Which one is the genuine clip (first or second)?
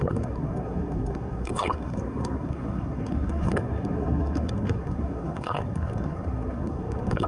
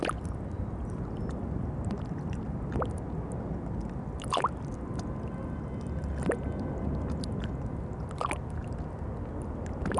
second